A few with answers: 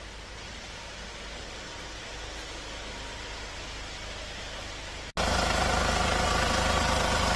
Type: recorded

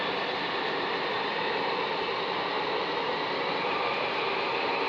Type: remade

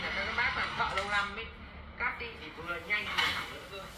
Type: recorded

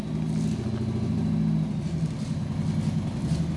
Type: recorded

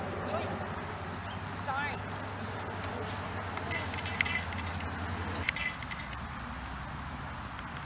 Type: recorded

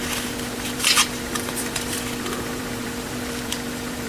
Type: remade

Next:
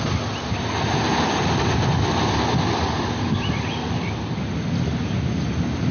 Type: recorded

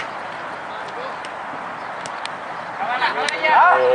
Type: recorded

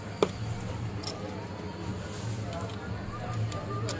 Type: recorded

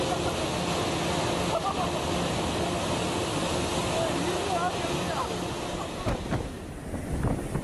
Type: recorded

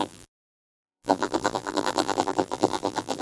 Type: remade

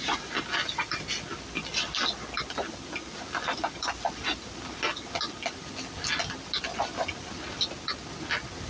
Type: recorded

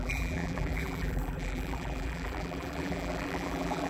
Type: remade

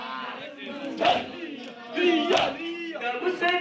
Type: recorded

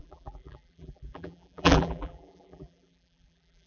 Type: remade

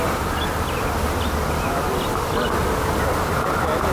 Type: recorded